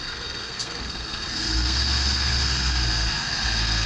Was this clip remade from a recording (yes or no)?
yes